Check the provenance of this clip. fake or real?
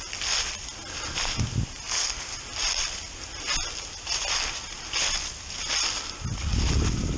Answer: real